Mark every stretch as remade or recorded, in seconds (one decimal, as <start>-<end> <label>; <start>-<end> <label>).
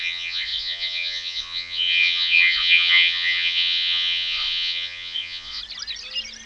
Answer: 0.0-5.6 remade; 5.6-6.5 recorded